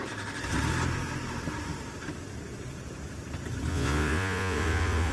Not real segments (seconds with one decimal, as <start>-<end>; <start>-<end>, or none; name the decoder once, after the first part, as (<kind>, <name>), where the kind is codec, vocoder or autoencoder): 3.7-5.1 (vocoder, Vocos)